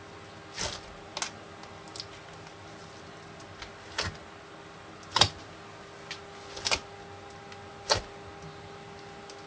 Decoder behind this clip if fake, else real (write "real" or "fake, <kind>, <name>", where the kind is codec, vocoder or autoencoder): real